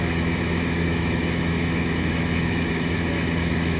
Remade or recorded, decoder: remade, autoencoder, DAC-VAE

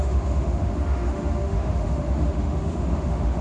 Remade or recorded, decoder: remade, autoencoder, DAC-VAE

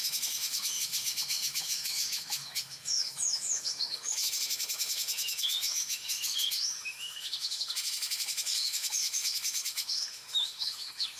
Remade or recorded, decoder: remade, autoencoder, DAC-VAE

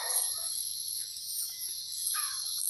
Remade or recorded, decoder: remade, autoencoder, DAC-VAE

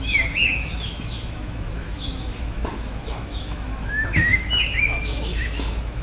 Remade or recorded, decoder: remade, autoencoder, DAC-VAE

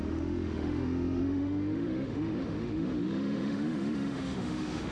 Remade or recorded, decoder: remade, autoencoder, DAC-VAE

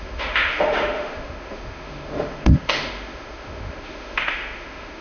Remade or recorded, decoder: remade, autoencoder, DAC-VAE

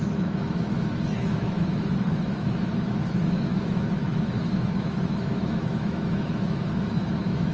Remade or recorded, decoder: remade, autoencoder, DAC-VAE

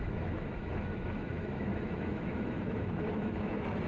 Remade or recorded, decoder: remade, autoencoder, DAC-VAE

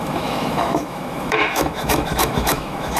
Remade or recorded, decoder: remade, autoencoder, DAC-VAE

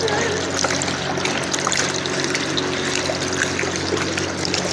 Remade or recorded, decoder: recorded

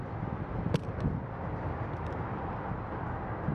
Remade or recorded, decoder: recorded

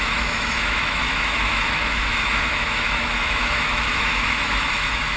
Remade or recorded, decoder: remade, autoencoder, DAC-VAE